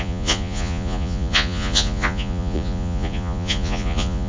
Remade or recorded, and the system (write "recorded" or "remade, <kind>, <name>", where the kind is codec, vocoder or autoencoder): remade, vocoder, Vocos